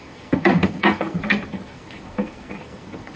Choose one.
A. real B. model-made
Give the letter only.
B